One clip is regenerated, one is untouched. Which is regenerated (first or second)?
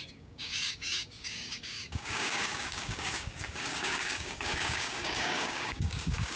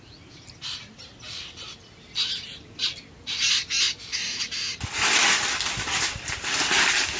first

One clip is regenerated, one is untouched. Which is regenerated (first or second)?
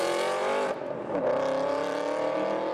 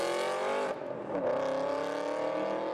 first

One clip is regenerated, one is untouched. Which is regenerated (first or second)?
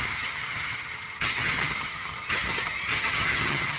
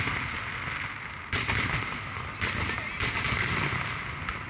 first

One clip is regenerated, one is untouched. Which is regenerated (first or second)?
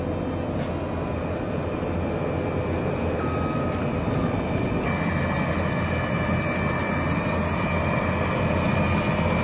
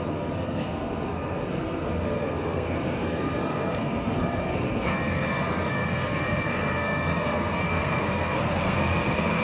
second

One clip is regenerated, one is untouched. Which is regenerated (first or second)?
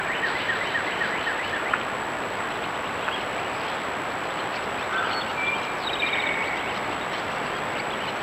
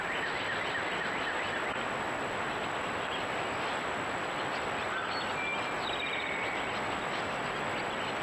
first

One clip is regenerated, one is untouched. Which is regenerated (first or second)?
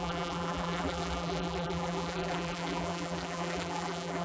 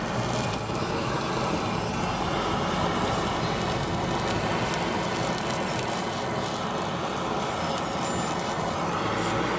first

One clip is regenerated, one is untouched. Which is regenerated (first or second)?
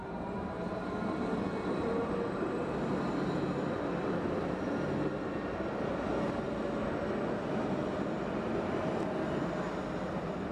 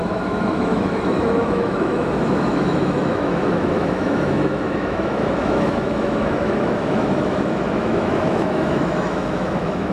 second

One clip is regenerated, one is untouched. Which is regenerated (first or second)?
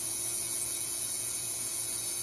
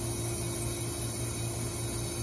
first